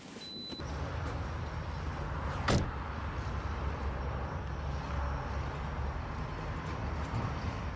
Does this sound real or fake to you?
real